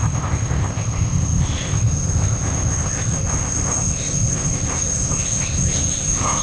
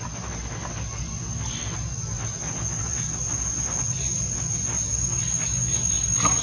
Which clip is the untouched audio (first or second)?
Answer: second